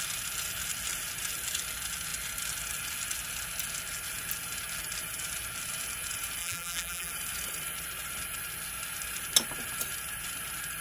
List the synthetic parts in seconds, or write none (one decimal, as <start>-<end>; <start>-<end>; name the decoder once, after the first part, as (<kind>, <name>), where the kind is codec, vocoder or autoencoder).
6.4-7.1 (vocoder, BigVGAN v2)

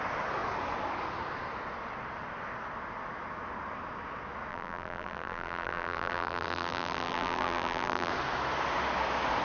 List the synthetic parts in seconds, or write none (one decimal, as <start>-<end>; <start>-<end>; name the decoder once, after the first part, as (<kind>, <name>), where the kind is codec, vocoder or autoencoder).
4.5-8.1 (vocoder, BigVGAN v2)

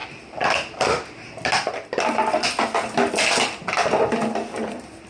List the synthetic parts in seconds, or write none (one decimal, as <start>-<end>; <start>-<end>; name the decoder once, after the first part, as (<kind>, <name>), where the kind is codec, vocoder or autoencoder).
none

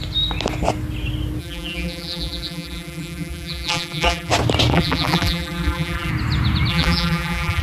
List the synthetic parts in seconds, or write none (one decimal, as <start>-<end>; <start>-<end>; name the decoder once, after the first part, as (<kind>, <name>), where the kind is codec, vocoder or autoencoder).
1.4-4.3 (vocoder, BigVGAN v2); 4.7-6.1; 6.7-7.6

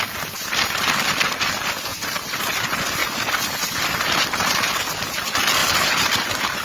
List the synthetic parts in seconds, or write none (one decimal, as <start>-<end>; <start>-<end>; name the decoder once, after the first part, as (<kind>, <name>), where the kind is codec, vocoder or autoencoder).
1.9-2.4 (vocoder, BigVGAN v2); 3.0-3.8